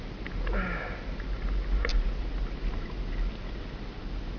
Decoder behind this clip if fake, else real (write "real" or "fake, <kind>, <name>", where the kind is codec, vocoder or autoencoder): real